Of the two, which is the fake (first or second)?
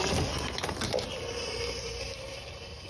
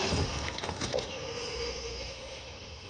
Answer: second